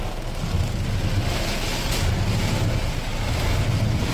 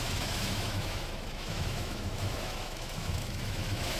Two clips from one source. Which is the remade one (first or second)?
second